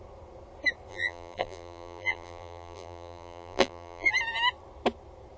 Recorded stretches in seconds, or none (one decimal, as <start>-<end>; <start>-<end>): 0.0-0.9; 4.1-5.4